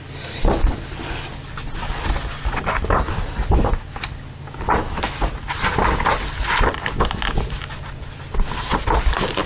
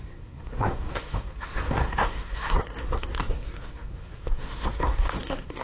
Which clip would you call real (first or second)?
first